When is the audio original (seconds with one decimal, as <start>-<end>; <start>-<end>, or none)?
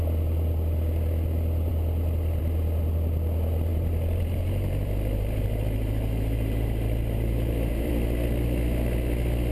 0.0-3.7; 7.9-9.5